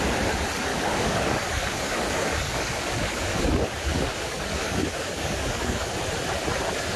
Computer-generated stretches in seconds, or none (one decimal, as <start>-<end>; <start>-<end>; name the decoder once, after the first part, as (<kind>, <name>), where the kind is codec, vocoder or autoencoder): 0.7-3.4 (codec, DAC); 3.9-5.9